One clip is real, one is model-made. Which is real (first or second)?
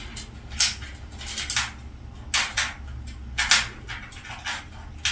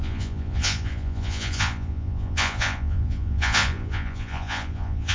first